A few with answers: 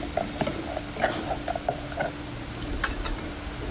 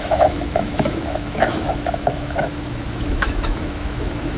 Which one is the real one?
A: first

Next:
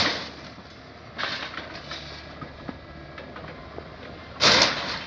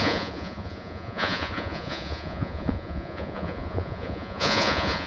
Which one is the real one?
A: first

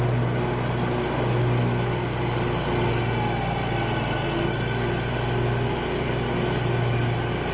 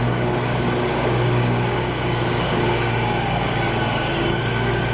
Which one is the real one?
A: first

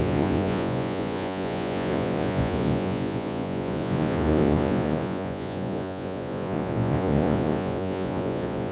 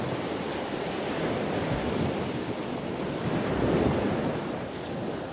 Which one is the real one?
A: second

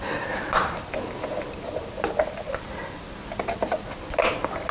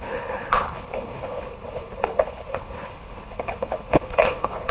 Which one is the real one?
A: first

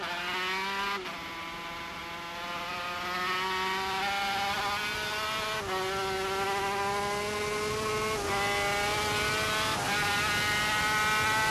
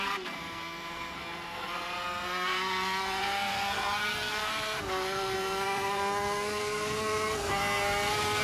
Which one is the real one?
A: first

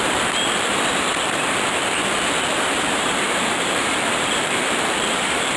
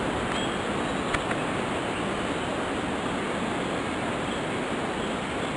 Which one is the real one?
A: second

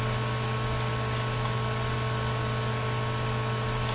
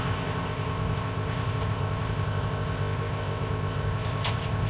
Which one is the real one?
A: first